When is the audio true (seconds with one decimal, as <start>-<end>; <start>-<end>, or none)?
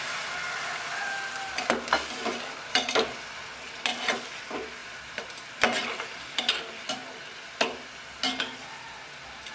0.0-4.8; 6.4-9.5